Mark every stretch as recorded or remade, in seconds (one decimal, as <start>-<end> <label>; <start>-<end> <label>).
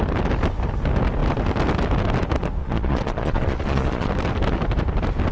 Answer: 0.0-2.6 recorded; 2.6-4.1 remade; 4.1-5.3 recorded